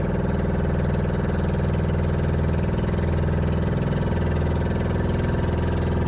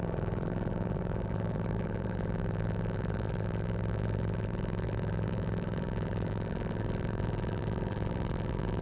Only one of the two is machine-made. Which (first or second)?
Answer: second